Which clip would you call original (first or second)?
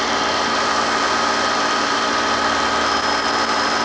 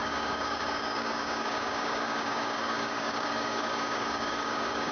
first